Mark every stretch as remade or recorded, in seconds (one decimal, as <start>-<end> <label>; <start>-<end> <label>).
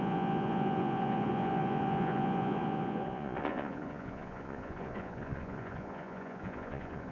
0.0-7.1 remade